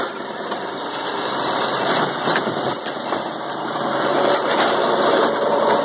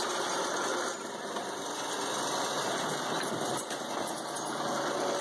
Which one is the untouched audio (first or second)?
second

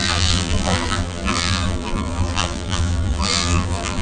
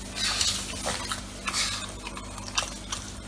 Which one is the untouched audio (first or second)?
second